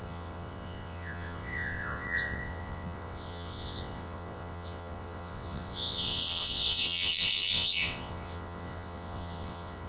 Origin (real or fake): fake